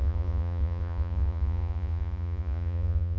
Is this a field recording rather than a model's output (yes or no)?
no